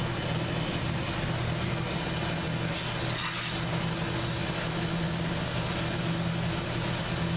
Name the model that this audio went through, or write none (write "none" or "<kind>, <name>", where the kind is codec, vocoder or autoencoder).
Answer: none